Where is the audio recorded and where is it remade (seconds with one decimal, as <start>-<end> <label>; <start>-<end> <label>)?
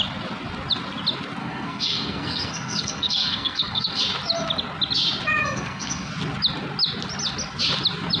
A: 0.0-1.4 recorded; 1.4-4.0 remade; 4.0-5.4 recorded; 5.4-6.1 remade; 6.1-8.2 recorded